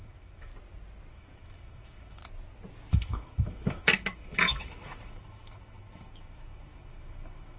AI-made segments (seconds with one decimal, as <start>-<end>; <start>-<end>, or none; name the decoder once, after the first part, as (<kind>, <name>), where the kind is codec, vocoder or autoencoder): 0.0-0.5 (autoencoder, DAC-VAE); 1.1-2.2; 2.9-7.6